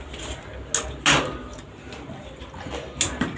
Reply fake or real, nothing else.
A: real